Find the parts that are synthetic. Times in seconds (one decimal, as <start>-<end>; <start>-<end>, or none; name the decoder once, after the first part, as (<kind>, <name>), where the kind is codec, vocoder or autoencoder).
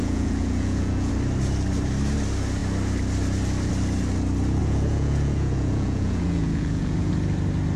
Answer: 0.0-1.1 (vocoder, Vocos); 4.6-7.1